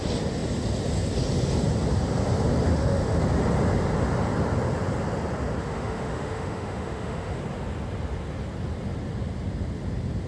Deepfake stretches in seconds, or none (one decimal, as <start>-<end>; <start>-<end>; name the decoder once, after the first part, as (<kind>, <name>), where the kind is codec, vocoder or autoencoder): 2.7-3.2 (autoencoder, DAC-VAE); 5.6-7.4